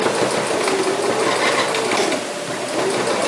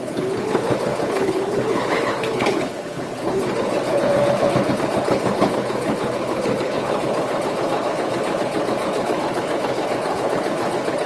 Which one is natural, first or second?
first